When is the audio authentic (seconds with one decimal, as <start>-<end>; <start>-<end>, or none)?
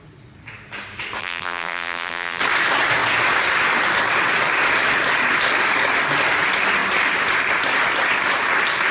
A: 0.0-1.2; 2.4-8.9